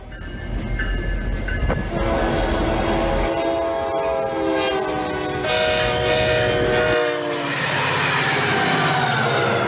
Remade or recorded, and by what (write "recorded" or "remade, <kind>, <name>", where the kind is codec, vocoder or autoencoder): recorded